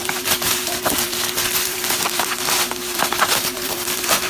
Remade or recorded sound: remade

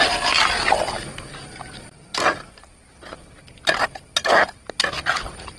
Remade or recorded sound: recorded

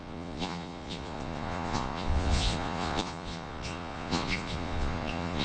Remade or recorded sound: remade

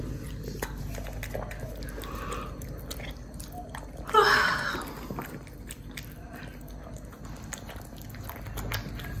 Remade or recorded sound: recorded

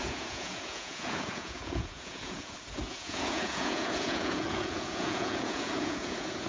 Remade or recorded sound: remade